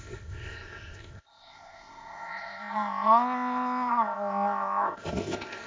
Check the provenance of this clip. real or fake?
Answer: fake